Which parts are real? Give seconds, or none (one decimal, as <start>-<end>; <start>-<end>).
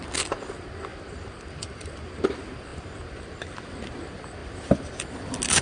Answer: 0.0-0.9; 2.1-4.4; 5.1-5.6